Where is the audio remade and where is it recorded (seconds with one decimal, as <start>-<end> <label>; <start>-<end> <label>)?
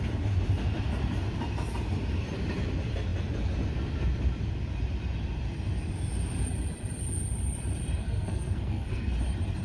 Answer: 0.0-8.0 recorded; 8.0-9.1 remade; 9.1-9.6 recorded